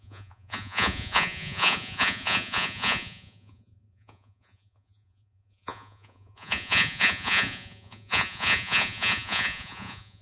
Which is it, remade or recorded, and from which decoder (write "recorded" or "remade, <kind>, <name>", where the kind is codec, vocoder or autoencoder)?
remade, vocoder, Vocos